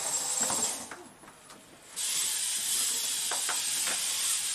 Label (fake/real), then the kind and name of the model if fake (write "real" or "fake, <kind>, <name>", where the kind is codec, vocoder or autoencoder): real